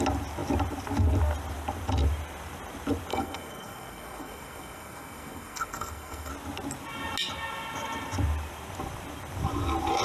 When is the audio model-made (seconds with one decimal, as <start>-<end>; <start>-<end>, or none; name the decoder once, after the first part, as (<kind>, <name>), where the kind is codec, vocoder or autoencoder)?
3.1-6.3 (codec, SNAC)